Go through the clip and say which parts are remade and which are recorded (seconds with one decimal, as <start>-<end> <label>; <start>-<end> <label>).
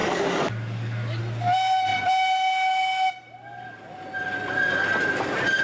0.0-1.2 remade; 1.2-5.6 recorded